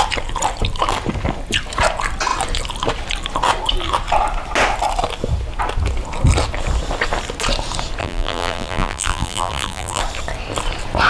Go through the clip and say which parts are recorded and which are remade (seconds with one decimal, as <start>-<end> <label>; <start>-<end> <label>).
0.0-8.0 recorded; 8.0-10.0 remade; 10.0-11.1 recorded